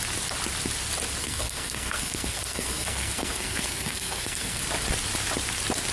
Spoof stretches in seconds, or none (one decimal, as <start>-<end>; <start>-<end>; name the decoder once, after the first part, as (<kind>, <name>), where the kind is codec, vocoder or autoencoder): 1.2-4.6 (codec, SNAC)